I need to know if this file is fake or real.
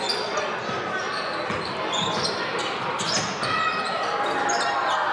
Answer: real